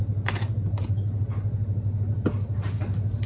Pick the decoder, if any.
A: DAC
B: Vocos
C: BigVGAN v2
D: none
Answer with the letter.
D